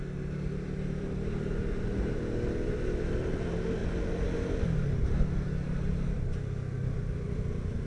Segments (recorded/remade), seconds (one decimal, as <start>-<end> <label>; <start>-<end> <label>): 0.0-7.9 recorded